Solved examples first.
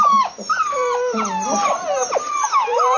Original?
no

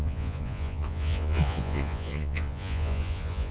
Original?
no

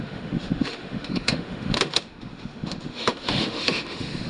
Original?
no